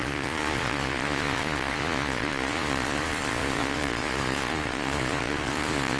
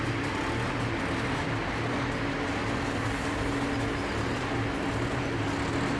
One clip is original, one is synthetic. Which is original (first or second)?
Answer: second